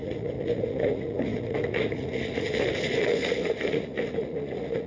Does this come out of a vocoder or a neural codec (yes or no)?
yes